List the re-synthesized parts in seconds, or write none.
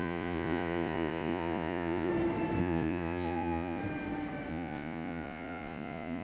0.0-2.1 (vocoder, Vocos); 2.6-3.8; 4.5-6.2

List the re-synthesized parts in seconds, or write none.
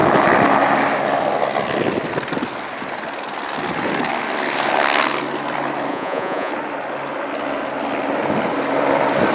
5.9-6.5 (vocoder, Vocos)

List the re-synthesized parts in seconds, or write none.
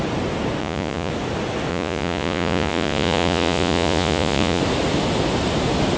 0.6-1.1 (vocoder, Vocos); 1.7-4.6